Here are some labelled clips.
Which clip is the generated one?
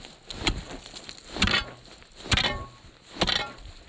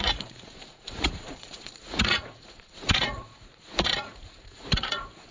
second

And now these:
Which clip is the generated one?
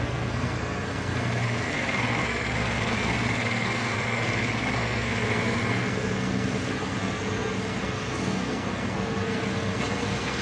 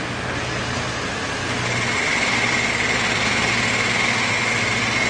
first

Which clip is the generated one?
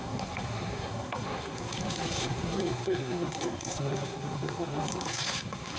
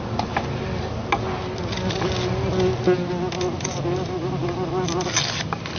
first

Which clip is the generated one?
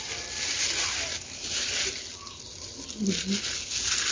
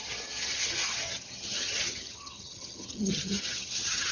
second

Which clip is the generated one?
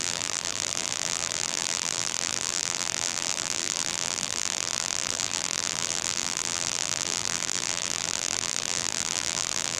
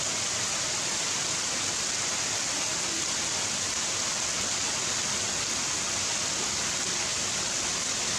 first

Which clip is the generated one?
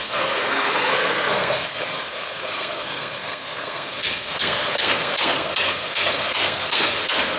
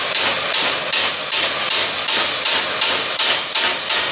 first